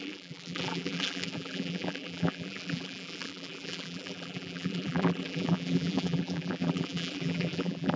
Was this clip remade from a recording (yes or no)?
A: yes